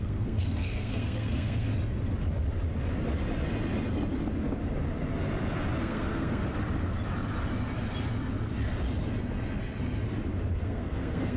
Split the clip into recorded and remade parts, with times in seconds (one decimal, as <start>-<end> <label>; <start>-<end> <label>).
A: 0.0-1.7 remade; 1.7-5.8 recorded; 5.8-6.4 remade; 6.4-10.6 recorded; 10.6-11.4 remade